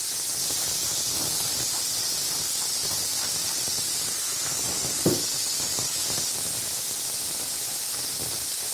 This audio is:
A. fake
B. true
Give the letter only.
B